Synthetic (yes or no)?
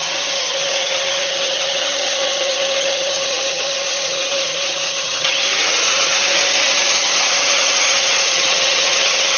yes